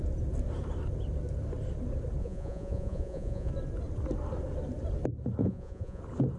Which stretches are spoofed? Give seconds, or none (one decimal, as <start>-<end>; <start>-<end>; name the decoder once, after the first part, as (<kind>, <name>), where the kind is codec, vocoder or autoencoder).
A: 2.2-3.5 (vocoder, Vocos); 5.4-6.0